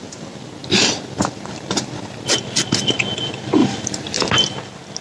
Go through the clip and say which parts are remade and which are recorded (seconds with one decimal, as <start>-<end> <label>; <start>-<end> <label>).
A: 0.0-0.6 recorded; 0.6-2.7 remade; 2.7-3.6 recorded; 3.6-4.3 remade; 4.3-5.0 recorded